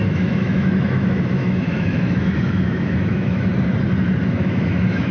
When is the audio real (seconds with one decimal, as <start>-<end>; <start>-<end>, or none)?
3.5-4.2